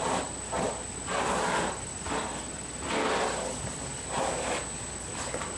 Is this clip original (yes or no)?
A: yes